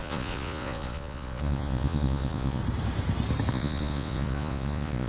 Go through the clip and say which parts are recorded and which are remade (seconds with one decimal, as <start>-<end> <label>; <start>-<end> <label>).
0.0-2.6 remade; 2.6-3.5 recorded; 3.5-5.1 remade